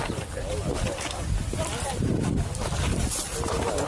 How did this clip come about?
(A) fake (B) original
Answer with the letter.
B